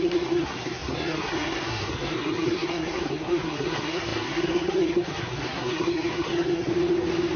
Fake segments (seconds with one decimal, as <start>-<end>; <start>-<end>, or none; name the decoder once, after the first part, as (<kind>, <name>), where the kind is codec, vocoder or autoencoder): 0.0-6.7 (codec, SNAC)